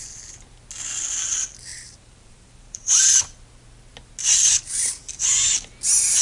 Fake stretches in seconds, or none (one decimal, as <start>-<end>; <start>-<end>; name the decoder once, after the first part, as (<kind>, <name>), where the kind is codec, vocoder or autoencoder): 1.7-3.2 (vocoder, BigVGAN v2)